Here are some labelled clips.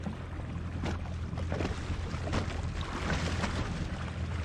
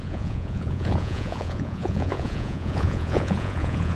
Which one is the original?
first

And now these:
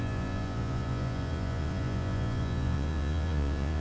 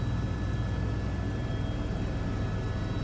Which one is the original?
second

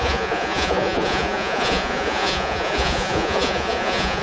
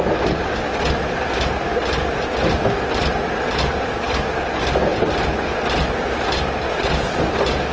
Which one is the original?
second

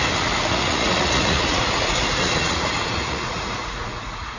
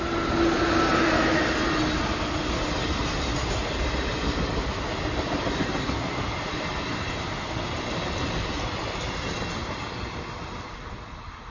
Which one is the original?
second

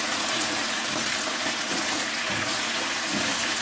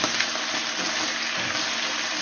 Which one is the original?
second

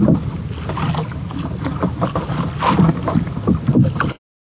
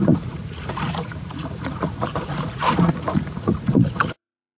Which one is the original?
first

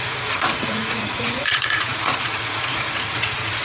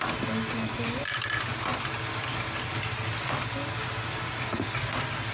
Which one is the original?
second